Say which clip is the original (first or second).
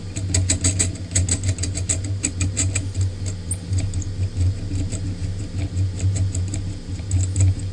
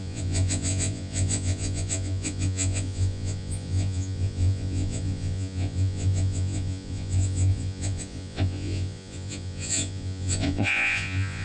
first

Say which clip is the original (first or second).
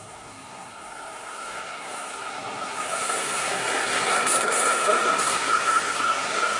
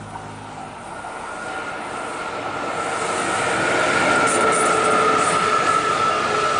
second